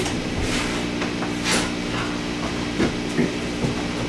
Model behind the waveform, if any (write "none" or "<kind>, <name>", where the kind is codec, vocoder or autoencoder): none